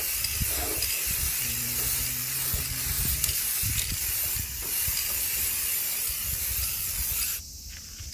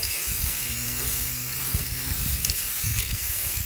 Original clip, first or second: first